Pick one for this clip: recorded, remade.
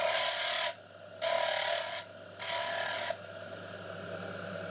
recorded